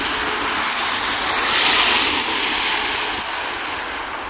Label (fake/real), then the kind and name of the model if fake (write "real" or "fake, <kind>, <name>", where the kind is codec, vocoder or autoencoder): real